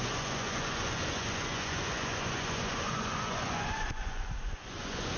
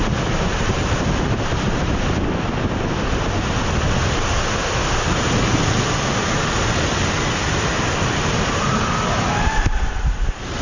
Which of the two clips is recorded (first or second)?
second